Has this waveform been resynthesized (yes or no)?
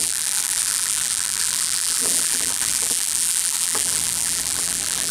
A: yes